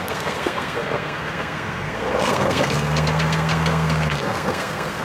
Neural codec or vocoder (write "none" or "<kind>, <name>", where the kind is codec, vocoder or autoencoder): codec, SNAC